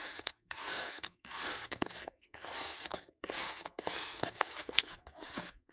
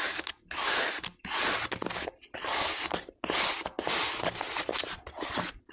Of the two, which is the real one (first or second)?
second